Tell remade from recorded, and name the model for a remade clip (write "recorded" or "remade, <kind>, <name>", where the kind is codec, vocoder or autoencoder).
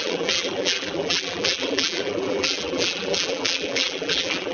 remade, vocoder, BigVGAN v2